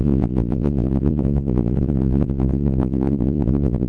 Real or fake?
fake